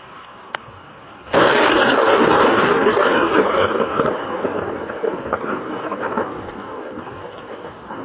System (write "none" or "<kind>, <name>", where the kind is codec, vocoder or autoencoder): codec, DAC